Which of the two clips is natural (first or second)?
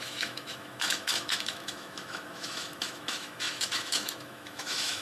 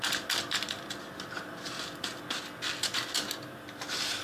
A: second